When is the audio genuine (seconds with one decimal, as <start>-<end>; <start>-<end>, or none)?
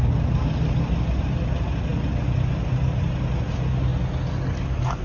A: 0.0-5.0